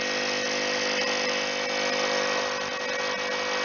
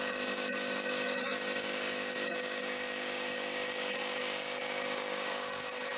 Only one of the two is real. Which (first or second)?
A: first